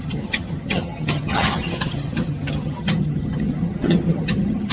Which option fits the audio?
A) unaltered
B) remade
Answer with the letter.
B